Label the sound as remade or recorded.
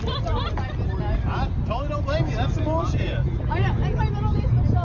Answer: recorded